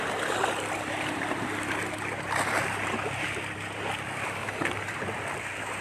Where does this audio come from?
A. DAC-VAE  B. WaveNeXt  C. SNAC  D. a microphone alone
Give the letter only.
D